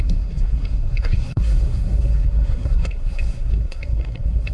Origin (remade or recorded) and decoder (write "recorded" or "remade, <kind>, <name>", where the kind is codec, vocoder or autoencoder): remade, codec, SNAC